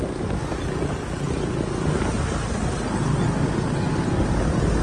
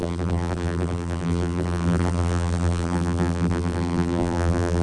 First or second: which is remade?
second